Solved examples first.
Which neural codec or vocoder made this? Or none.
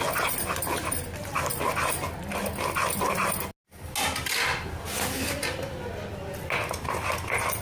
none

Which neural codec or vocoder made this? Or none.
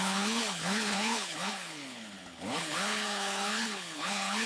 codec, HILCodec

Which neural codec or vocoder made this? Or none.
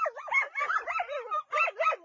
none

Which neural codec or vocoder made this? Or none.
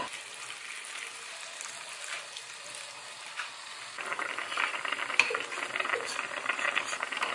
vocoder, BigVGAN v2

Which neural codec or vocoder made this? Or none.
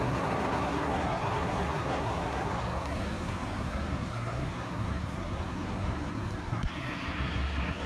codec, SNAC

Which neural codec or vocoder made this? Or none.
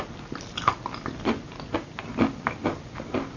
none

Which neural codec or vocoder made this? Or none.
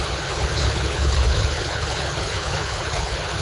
codec, HILCodec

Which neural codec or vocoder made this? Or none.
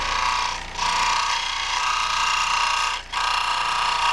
vocoder, BigVGAN v2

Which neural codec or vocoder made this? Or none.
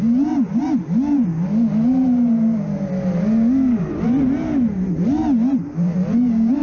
none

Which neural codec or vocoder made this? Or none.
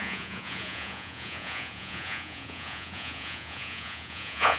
vocoder, Vocos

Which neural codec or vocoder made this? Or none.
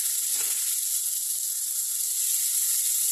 none